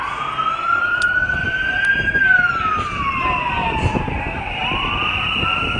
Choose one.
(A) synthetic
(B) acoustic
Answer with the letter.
B